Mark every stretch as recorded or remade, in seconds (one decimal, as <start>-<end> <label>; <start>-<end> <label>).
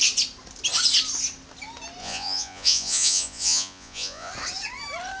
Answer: 0.0-2.0 recorded; 2.0-4.3 remade; 4.3-5.2 recorded